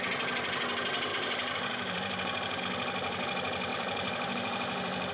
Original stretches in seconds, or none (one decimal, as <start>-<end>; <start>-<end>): 0.0-1.1; 2.6-3.7